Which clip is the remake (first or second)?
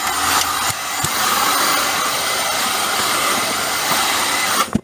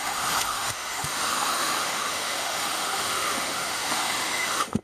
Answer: second